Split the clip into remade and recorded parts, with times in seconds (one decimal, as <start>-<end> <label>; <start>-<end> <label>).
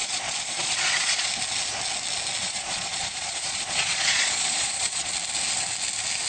0.0-1.3 remade; 1.3-2.4 recorded; 2.4-5.1 remade; 5.1-6.3 recorded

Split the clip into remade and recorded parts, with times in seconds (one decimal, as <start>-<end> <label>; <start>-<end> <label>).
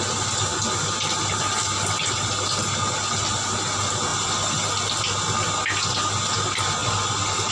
0.0-4.1 recorded; 4.1-5.0 remade; 5.0-6.8 recorded; 6.8-7.5 remade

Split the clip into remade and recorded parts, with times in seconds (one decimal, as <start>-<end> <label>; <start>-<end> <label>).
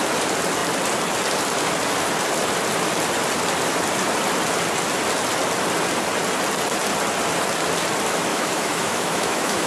0.0-8.3 recorded; 8.3-9.7 remade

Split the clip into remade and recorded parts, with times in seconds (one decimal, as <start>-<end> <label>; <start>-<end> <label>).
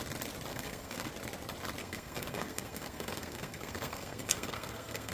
0.0-0.5 recorded; 0.5-1.1 remade; 1.1-1.8 recorded; 1.8-5.1 remade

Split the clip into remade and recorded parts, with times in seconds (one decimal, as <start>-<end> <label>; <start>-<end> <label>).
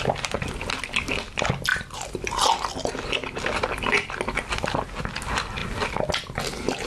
0.0-6.9 recorded